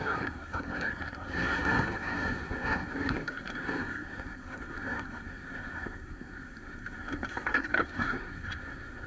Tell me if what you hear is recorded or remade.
remade